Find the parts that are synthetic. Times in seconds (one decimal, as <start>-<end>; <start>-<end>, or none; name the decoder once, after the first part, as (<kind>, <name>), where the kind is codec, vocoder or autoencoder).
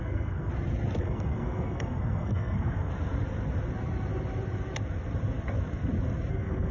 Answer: 0.0-0.5 (codec, SNAC); 1.0-2.9; 6.3-6.7